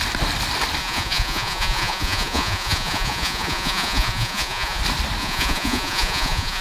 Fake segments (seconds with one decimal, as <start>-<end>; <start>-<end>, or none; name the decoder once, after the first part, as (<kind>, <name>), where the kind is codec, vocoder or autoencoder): 0.8-4.8 (vocoder, Vocos); 5.2-6.6